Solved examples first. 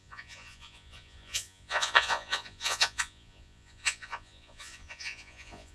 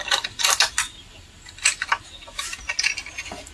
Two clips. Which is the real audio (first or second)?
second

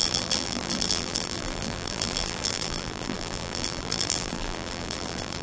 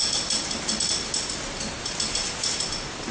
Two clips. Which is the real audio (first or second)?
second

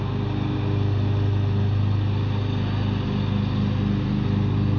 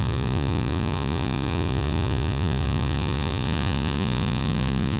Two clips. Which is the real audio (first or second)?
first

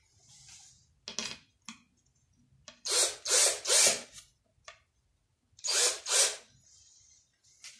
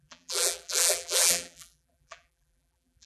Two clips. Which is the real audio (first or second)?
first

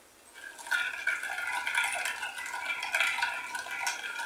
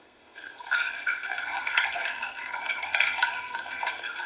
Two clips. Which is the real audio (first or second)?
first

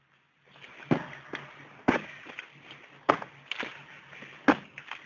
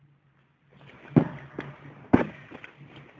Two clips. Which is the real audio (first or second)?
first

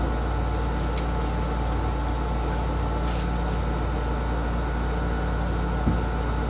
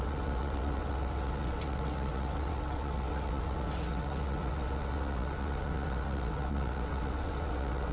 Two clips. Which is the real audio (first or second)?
first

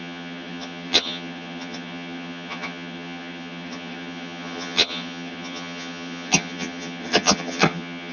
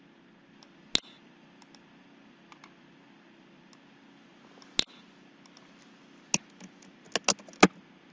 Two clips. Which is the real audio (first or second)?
second